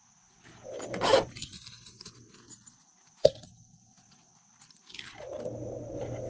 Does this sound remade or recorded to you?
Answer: recorded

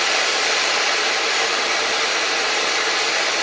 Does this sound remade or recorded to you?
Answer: recorded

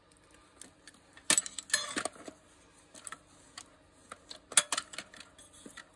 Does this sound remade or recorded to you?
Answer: recorded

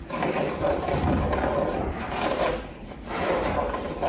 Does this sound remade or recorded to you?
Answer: recorded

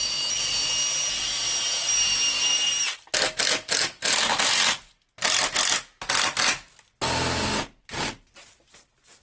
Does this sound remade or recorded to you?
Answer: recorded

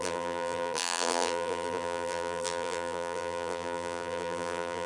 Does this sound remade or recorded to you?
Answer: remade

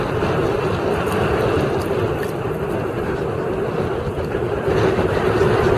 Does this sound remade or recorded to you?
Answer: recorded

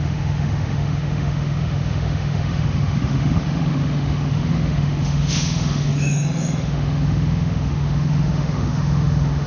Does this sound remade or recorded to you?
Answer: remade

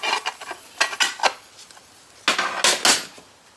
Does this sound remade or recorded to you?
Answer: recorded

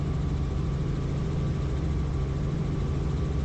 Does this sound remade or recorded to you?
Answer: recorded